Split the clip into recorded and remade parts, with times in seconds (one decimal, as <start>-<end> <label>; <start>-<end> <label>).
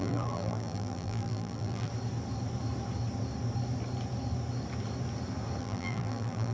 0.0-1.9 remade; 1.9-5.6 recorded; 5.6-6.5 remade